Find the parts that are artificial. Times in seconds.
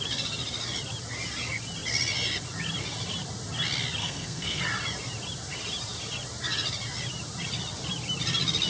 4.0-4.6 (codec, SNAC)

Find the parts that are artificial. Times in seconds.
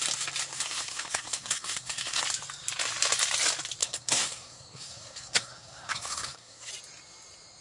0.5-2.2 (codec, SNAC); 3.8-6.7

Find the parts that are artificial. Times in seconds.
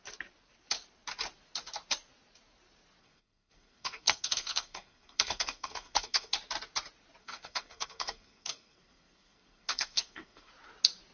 3.0-6.3 (codec, SNAC); 7.2-10.5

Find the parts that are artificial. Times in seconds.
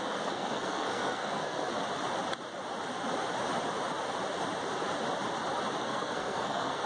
0.0-1.7 (codec, SNAC); 5.8-6.9